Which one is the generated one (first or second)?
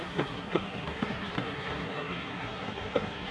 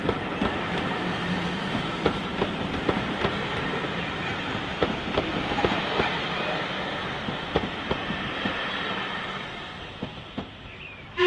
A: first